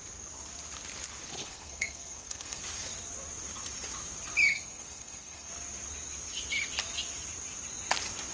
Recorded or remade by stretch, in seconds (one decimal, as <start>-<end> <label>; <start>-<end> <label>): 0.0-1.4 recorded; 1.4-2.6 remade; 2.6-4.5 recorded; 4.5-5.5 remade; 5.5-8.3 recorded